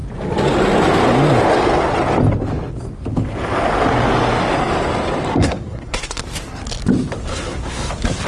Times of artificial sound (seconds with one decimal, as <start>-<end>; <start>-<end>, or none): 5.3-6.2; 7.3-7.9